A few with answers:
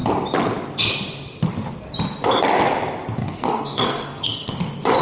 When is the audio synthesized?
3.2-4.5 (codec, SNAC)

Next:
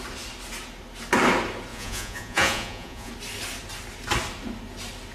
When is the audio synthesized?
1.7-3.1 (vocoder, Vocos)

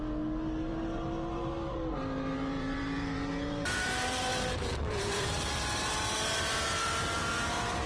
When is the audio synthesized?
0.7-5.4 (vocoder, BigVGAN v2); 7.2-7.9

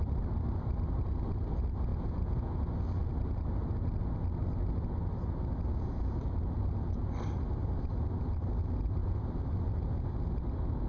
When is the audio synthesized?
1.9-2.5 (vocoder, Vocos)